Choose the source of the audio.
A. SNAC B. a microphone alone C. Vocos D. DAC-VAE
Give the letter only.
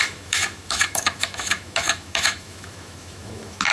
D